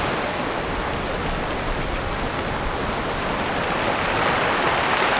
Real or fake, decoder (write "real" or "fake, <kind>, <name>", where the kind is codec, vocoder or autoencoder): real